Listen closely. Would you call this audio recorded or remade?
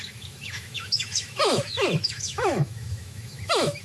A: remade